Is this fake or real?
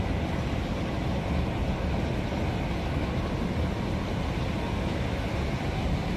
real